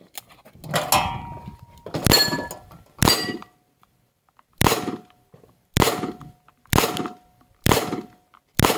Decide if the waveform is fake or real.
real